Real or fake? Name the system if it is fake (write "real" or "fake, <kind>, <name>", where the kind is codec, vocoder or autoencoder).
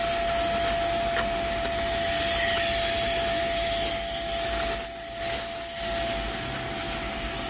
real